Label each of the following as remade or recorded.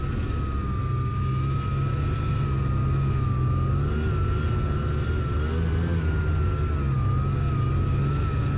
recorded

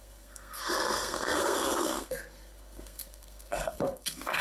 remade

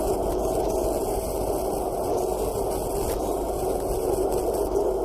recorded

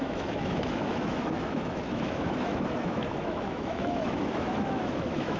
remade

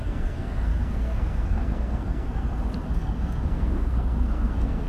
remade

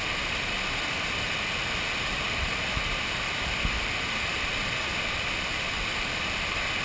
recorded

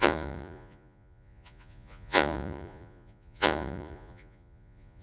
remade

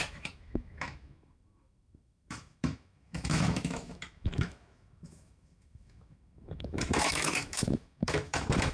remade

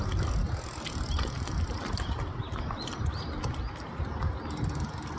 recorded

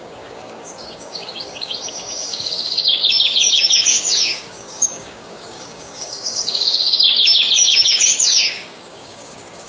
remade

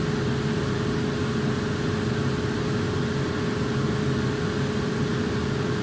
recorded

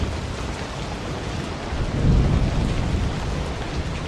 recorded